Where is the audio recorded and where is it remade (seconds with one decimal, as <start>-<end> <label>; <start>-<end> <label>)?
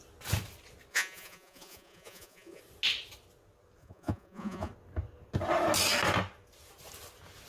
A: 0.0-0.9 recorded; 0.9-2.6 remade; 2.6-3.8 recorded; 3.8-4.7 remade; 4.7-7.5 recorded